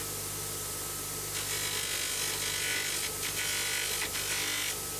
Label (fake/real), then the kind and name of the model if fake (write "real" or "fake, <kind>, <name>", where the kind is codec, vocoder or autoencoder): real